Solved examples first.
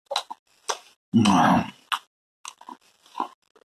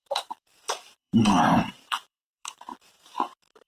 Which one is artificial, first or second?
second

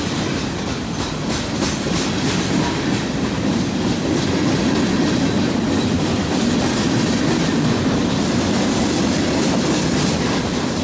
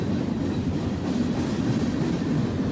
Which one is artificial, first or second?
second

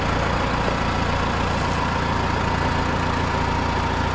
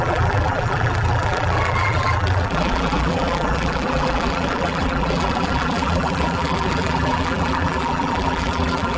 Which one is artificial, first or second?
second